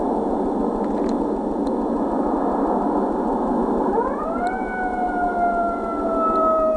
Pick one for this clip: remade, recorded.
recorded